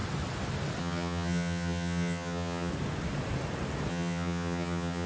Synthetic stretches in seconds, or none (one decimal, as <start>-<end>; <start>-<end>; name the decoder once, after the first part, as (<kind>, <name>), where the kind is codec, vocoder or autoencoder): 0.8-2.7 (vocoder, HiFi-GAN); 3.9-5.1